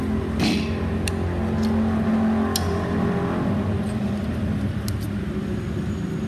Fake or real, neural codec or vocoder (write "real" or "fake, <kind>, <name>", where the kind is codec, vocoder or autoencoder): real